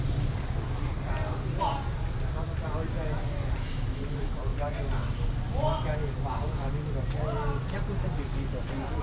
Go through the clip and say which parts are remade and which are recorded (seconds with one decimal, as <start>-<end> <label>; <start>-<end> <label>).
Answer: 0.0-9.0 recorded